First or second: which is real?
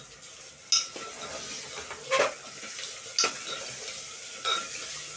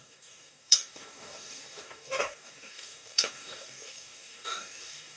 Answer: first